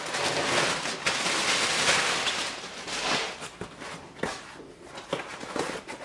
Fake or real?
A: real